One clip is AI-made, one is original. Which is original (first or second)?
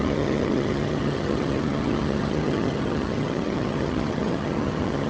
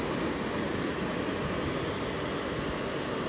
second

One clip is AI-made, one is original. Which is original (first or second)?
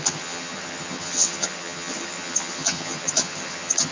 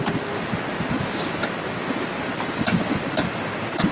second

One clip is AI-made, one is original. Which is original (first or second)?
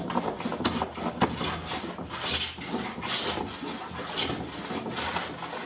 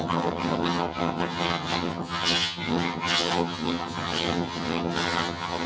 first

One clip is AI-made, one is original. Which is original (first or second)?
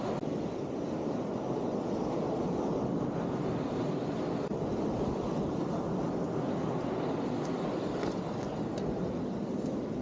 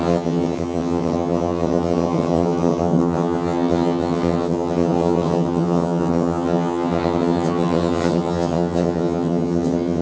first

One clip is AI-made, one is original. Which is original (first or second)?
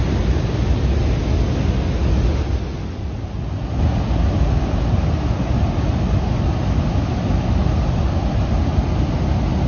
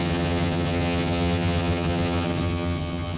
first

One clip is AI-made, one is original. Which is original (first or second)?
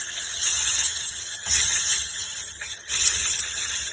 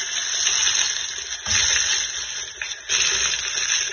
second